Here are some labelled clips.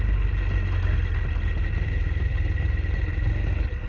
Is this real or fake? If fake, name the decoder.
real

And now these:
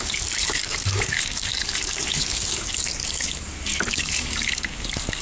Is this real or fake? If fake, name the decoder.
fake, codec, DAC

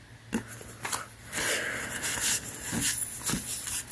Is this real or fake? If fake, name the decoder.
real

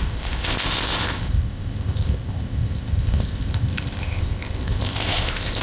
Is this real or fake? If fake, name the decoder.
fake, codec, ZipCodec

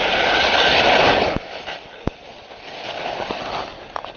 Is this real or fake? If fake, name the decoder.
real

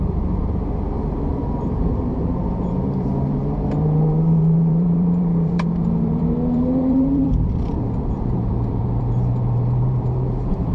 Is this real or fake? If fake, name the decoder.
fake, vocoder, BigVGAN v2